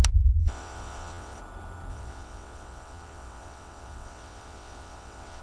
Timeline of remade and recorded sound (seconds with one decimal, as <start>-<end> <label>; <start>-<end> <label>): 0.0-0.4 recorded; 0.4-1.4 remade; 1.4-1.9 recorded; 1.9-5.4 remade